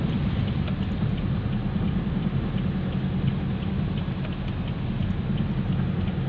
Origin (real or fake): real